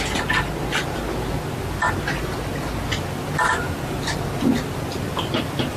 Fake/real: real